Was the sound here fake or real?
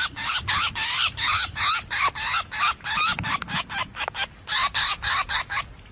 real